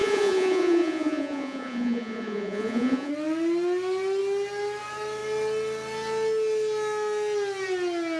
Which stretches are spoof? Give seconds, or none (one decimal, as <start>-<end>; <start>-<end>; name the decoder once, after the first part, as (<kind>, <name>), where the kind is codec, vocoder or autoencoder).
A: 0.0-3.1 (vocoder, Vocos)